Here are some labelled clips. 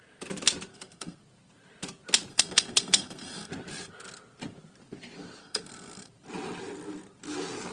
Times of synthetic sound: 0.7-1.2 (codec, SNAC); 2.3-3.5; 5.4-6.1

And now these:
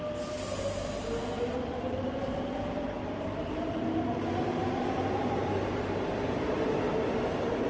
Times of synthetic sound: none

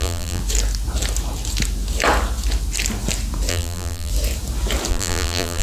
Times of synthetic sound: 0.0-0.4 (vocoder, BigVGAN v2); 3.5-4.1; 4.9-5.6